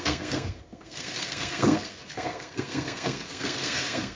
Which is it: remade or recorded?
remade